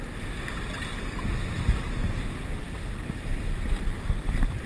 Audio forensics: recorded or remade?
recorded